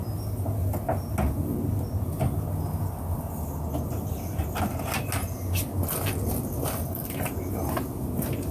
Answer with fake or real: real